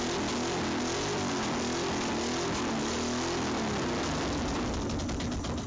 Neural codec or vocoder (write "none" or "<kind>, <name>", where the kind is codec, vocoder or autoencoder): none